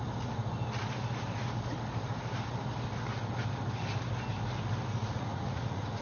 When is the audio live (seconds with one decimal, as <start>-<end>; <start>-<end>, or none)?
0.0-5.0